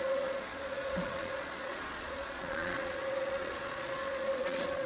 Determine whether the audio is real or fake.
fake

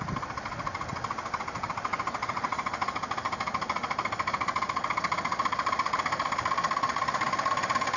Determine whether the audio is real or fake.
real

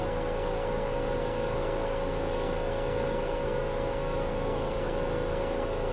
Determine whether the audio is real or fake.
fake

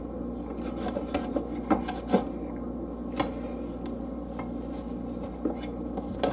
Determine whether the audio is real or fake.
real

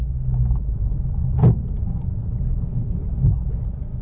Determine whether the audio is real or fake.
real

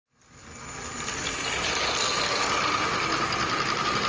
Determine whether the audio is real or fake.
real